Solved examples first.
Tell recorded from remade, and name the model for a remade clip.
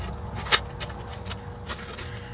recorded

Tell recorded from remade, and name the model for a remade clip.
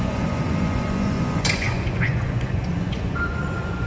remade, vocoder, Vocos